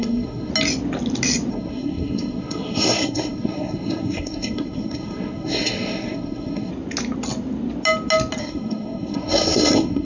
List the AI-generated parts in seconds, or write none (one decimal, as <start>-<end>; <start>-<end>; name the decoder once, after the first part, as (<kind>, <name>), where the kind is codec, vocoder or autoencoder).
0.0-0.5 (codec, SNAC); 1.5-6.7; 8.4-10.0